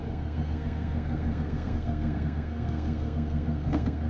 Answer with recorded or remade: remade